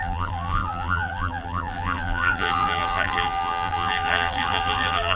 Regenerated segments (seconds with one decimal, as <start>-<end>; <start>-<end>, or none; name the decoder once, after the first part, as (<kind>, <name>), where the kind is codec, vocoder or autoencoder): 0.0-5.2 (vocoder, BigVGAN v2)